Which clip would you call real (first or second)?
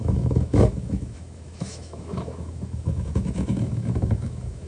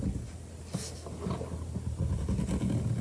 second